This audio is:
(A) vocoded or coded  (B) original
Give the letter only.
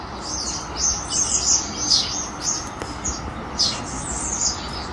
B